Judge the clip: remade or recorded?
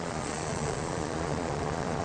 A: remade